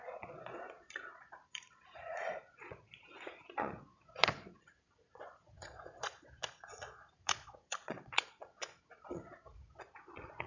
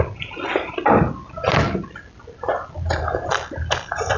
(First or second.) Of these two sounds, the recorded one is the second